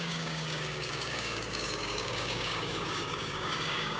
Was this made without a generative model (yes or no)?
no